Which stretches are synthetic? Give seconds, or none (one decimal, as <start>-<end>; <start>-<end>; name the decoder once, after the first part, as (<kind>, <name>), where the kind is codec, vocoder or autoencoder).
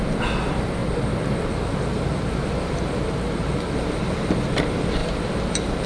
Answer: 0.8-4.3 (vocoder, BigVGAN v2); 5.0-5.9